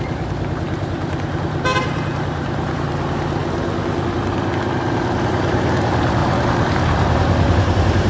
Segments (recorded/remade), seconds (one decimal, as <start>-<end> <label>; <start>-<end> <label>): 0.0-3.4 remade; 3.4-5.1 recorded; 5.1-8.1 remade